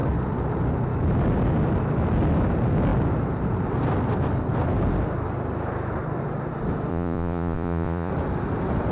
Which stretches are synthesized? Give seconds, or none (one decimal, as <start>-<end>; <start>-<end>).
6.9-8.1